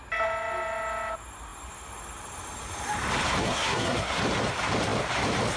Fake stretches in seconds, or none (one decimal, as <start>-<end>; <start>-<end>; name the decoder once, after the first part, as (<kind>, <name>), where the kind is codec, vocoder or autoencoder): 3.4-4.2 (codec, SNAC)